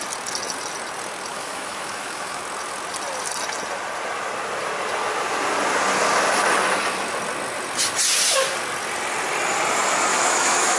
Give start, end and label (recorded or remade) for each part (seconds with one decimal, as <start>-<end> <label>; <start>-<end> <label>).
0.0-1.3 recorded; 1.3-2.4 remade; 2.4-10.1 recorded; 10.1-10.8 remade